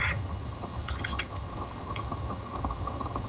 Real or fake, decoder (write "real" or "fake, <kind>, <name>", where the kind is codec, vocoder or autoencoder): fake, vocoder, HiFi-GAN